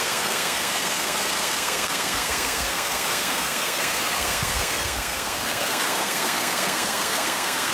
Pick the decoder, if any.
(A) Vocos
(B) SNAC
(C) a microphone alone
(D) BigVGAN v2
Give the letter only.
B